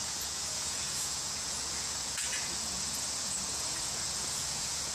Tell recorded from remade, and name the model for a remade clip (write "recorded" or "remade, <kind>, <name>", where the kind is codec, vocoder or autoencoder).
remade, vocoder, Vocos